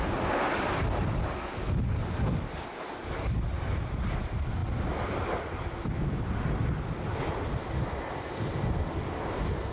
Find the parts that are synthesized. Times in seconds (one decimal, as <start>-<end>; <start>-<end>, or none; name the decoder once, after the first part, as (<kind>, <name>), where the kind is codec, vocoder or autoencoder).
none